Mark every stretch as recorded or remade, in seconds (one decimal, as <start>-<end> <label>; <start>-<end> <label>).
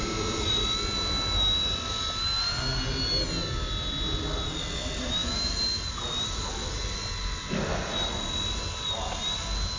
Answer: 0.0-9.8 recorded